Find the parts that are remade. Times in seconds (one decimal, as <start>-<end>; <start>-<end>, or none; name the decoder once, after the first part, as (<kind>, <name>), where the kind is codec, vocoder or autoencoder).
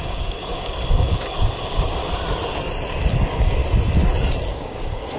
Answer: 0.0-2.0 (codec, DAC); 3.1-3.6; 4.5-5.2